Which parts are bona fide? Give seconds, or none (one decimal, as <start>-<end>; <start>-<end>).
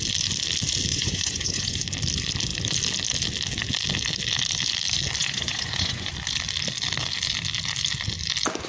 0.0-0.9; 1.8-5.2; 6.1-8.7